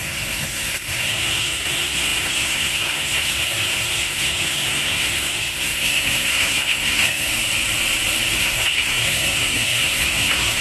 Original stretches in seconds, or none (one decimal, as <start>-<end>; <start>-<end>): 7.3-8.3